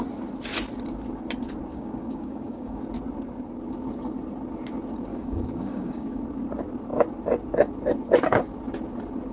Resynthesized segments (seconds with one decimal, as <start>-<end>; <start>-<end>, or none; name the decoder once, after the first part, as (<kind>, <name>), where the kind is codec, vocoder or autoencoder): 1.7-2.8 (codec, DAC); 5.1-6.2